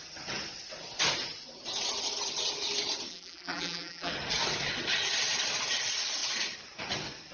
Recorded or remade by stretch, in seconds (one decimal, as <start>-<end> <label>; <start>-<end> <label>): 0.0-3.1 recorded; 3.1-4.1 remade; 4.1-7.3 recorded